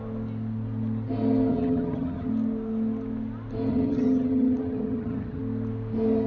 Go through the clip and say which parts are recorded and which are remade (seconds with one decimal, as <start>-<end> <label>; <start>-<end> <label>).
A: 0.0-1.5 recorded; 1.5-2.3 remade; 2.3-3.7 recorded; 3.7-5.4 remade; 5.4-6.3 recorded